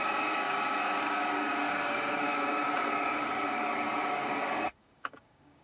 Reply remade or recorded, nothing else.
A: remade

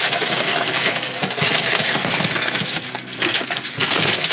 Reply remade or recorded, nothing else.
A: remade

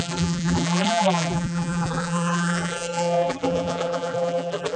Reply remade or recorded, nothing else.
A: remade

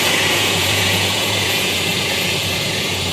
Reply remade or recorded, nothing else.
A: remade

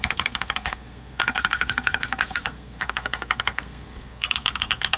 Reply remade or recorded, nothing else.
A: remade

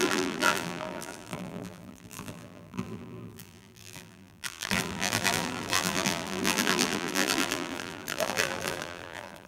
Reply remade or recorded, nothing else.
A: remade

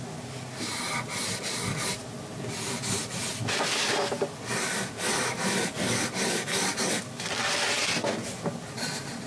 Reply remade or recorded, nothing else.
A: recorded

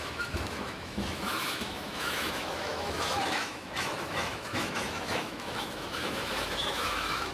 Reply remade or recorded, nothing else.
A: remade